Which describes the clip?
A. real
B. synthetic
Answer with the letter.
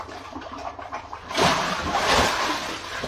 A